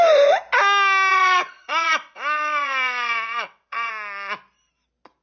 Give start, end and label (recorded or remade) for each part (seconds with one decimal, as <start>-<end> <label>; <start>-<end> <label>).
0.0-1.1 recorded; 1.1-3.9 remade; 3.9-5.2 recorded